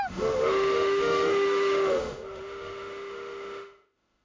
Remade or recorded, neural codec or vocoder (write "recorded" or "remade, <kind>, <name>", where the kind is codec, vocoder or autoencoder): remade, autoencoder, DAC-VAE